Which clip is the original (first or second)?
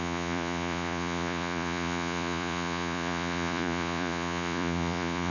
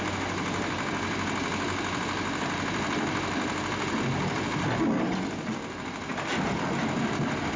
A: second